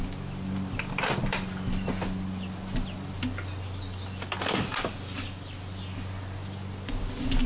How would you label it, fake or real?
real